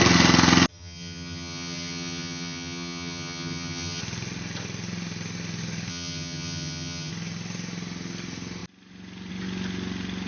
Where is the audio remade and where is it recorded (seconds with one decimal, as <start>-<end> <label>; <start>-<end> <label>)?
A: 0.0-0.7 recorded; 0.7-4.0 remade; 4.0-5.9 recorded; 5.9-7.1 remade; 7.1-10.3 recorded